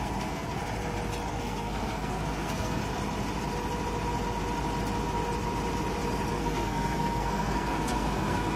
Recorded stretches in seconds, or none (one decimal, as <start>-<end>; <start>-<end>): 0.6-1.3; 2.8-6.3